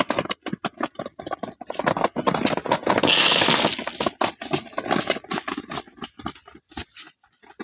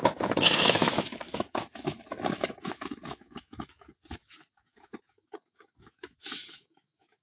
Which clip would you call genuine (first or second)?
first